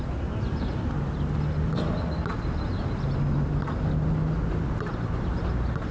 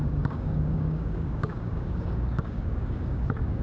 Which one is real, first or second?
first